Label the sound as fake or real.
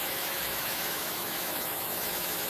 fake